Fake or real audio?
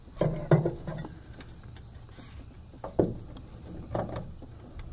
real